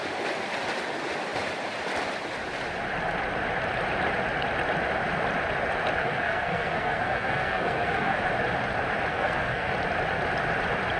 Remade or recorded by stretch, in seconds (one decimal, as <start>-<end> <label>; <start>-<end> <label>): 0.0-6.0 recorded; 6.0-8.2 remade; 8.2-9.1 recorded; 9.1-9.7 remade; 9.7-11.0 recorded